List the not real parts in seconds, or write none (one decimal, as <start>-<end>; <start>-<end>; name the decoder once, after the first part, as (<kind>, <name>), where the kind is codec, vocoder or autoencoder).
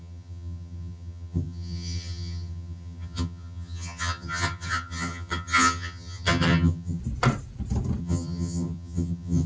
0.0-7.0 (vocoder, HiFi-GAN); 8.0-9.5